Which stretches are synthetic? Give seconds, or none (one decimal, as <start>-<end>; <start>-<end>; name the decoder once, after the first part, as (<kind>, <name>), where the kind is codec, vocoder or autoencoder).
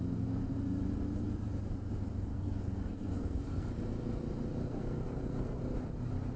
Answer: 2.3-3.7 (codec, SNAC); 4.6-5.6